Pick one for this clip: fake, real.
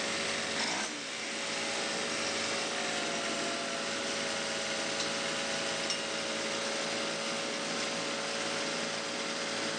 real